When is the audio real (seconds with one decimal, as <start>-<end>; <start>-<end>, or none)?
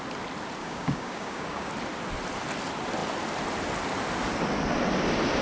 0.0-0.6; 1.7-5.4